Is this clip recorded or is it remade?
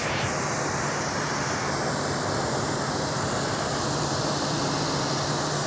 remade